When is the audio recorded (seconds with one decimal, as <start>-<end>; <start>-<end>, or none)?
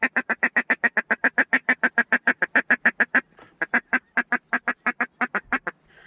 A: 0.0-6.1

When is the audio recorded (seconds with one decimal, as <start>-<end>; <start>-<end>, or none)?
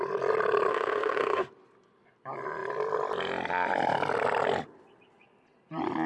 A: 0.0-0.7; 1.5-6.1